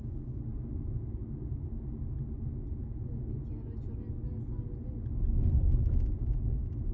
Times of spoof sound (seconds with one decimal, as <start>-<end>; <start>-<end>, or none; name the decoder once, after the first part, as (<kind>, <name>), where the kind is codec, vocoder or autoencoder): none